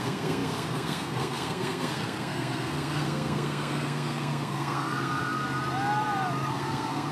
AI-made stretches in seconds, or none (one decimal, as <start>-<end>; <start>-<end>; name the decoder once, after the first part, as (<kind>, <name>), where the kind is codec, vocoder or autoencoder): 0.0-5.4 (codec, SNAC); 6.5-7.1